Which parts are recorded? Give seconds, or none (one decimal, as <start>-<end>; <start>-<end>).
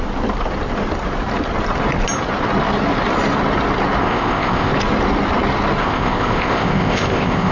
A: 0.0-4.0; 4.7-5.8